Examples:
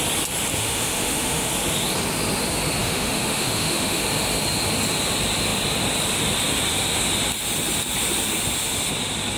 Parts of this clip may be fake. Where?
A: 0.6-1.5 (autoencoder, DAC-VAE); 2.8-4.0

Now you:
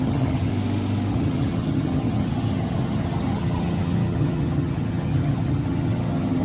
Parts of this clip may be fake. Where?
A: 0.0-0.5 (vocoder, HiFi-GAN); 1.1-6.4